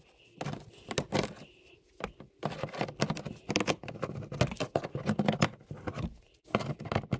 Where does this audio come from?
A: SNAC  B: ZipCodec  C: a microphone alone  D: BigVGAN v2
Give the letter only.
C